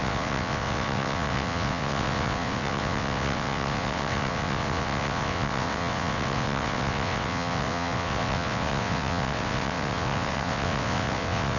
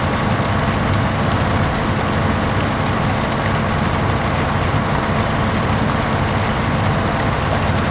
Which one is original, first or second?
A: second